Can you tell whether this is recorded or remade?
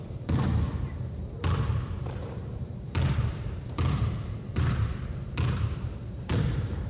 remade